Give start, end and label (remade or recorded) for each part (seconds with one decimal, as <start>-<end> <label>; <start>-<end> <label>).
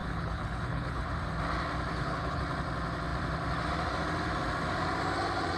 0.0-1.1 remade; 1.1-1.9 recorded; 1.9-2.4 remade; 2.4-5.6 recorded